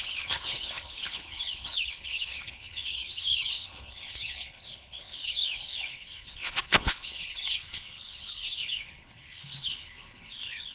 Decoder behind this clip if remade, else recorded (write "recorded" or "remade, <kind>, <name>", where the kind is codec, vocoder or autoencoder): remade, codec, HILCodec